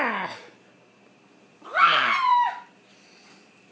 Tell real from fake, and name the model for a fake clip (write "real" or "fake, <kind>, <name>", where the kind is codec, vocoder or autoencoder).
real